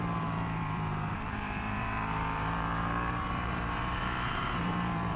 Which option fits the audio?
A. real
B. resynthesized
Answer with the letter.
B